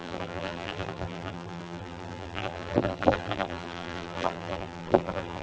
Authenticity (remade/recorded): remade